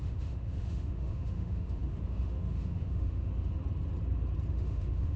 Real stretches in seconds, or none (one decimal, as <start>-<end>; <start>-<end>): 3.3-4.5

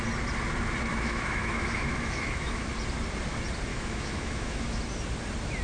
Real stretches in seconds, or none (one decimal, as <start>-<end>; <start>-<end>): 0.0-0.9; 2.7-3.7; 4.8-5.6

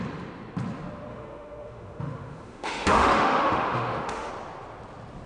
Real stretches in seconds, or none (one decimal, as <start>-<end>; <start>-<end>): 0.0-1.1; 4.3-5.3

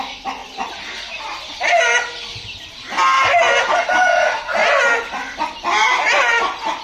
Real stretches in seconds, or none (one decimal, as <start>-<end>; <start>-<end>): 0.0-6.8